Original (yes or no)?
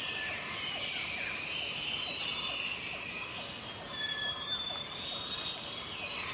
yes